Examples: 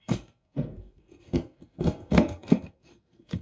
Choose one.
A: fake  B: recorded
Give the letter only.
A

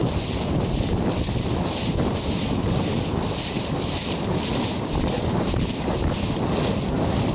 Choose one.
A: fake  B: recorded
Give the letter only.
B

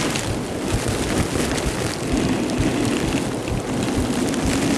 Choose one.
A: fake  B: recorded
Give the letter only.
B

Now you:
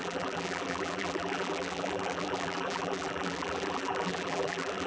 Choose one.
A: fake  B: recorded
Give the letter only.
A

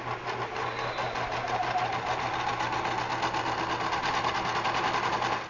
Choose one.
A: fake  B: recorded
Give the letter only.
B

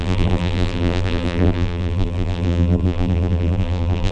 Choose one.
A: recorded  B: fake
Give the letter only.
B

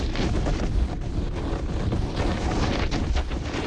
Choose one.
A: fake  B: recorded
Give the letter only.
B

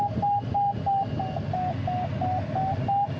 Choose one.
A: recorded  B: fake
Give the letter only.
A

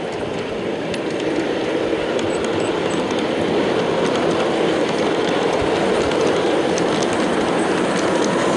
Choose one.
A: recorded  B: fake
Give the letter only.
A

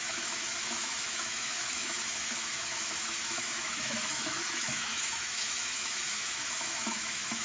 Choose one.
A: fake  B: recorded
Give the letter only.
A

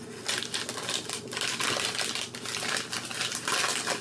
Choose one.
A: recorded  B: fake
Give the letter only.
A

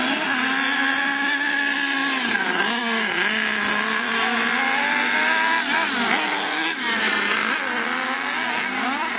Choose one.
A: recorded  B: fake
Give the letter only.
A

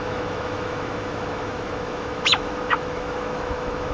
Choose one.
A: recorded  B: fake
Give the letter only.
B